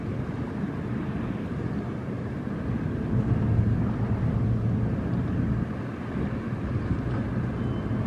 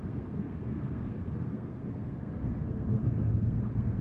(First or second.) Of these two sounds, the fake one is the second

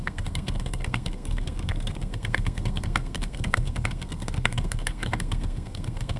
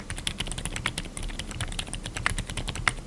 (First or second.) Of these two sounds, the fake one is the first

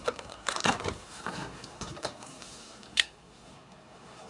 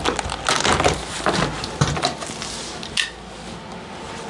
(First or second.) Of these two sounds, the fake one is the first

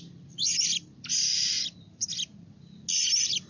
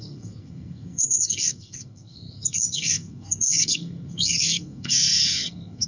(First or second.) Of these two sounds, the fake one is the second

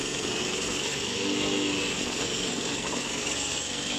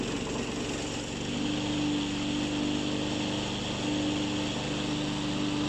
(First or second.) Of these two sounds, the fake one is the first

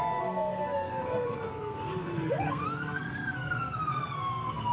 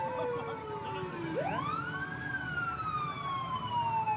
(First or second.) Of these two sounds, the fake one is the first